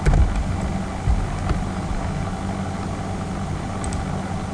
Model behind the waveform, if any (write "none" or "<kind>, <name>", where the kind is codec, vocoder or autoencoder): none